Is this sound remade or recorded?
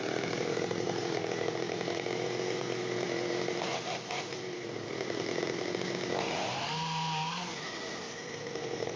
recorded